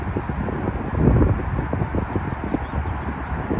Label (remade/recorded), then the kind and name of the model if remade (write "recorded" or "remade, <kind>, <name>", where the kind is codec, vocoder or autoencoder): recorded